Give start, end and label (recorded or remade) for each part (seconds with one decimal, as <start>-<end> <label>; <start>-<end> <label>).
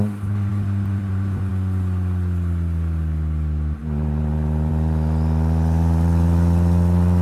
0.0-7.2 recorded